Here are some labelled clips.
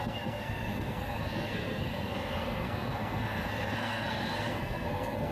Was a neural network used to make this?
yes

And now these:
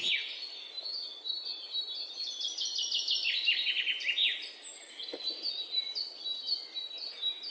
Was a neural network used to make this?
no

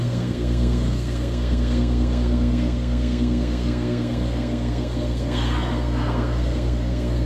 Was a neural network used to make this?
yes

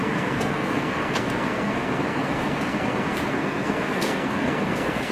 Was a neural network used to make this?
yes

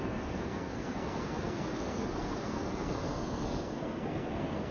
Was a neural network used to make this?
yes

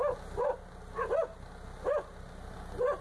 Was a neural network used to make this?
no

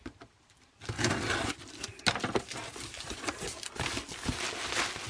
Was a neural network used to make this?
no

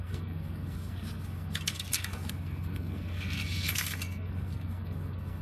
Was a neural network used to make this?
yes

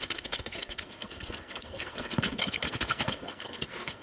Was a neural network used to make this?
yes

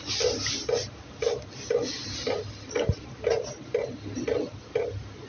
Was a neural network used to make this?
no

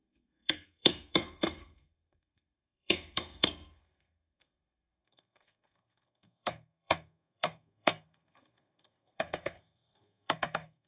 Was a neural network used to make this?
yes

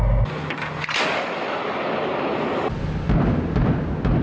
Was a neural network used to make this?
no